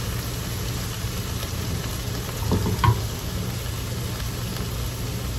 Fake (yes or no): no